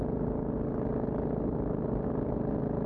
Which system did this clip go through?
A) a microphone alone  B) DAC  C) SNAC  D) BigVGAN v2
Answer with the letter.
A